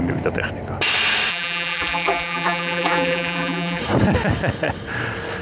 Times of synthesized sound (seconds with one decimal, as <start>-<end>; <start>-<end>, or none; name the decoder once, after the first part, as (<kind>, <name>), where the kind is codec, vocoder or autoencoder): 1.3-3.8 (vocoder, BigVGAN v2)